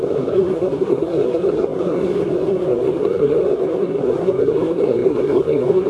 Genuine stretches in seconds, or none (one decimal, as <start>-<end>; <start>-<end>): none